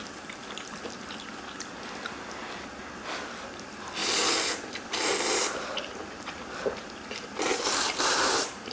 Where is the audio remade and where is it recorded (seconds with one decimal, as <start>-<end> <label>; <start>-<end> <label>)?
0.0-2.4 remade; 2.4-3.1 recorded; 3.1-8.7 remade